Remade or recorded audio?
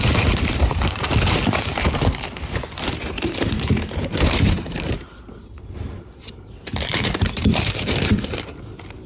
remade